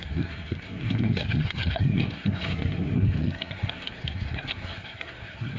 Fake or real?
fake